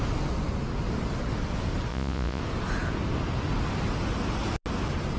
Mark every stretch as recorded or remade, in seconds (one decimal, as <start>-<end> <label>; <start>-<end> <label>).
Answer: 0.0-1.9 recorded; 1.9-2.4 remade; 2.4-5.2 recorded